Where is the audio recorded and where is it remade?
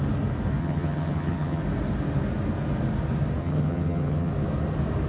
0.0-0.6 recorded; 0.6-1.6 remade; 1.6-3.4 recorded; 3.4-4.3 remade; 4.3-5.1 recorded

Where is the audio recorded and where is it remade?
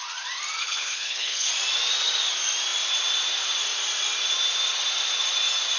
0.0-0.6 recorded; 0.6-1.5 remade; 1.5-5.8 recorded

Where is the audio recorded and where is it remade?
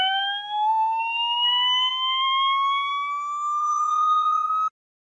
0.0-3.6 recorded; 3.6-4.5 remade; 4.5-5.1 recorded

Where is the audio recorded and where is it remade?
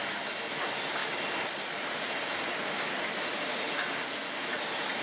0.0-1.0 recorded; 1.0-3.2 remade; 3.2-5.0 recorded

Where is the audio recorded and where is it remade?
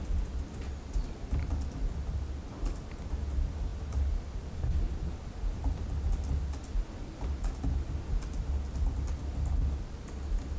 0.0-10.6 recorded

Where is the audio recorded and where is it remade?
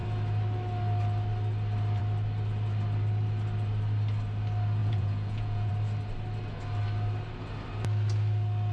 0.0-4.8 recorded; 4.8-5.7 remade; 5.7-8.7 recorded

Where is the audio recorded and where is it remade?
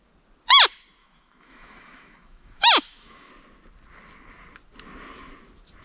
0.0-1.0 recorded; 1.0-3.3 remade; 3.3-5.8 recorded